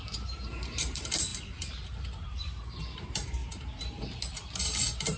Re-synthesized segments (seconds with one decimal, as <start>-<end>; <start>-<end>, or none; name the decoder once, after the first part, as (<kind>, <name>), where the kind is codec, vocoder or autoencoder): 0.0-1.3 (vocoder, BigVGAN v2); 2.8-3.4; 4.6-5.2